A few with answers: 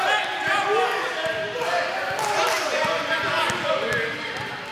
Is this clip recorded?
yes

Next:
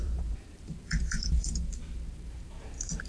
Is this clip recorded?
no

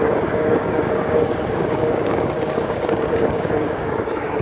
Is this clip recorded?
no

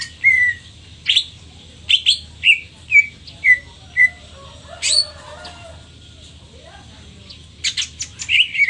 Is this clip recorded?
yes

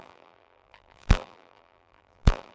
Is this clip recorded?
no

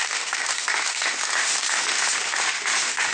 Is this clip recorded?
no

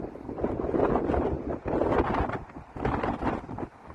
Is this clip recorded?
yes